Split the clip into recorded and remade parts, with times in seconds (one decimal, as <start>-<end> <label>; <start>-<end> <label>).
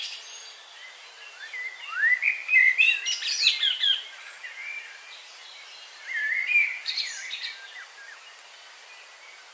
0.0-2.4 recorded; 2.4-3.0 remade; 3.0-5.2 recorded; 5.2-7.3 remade; 7.3-9.5 recorded